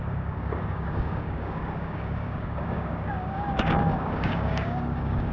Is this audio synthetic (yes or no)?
yes